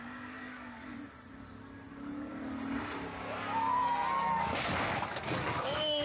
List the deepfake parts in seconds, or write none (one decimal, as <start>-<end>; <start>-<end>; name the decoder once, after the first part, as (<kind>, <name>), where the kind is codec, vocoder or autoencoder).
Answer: 0.0-0.9 (codec, DAC); 1.9-2.3; 4.2-6.0